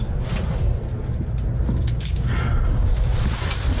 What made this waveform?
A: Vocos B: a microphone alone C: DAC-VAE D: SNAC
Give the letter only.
B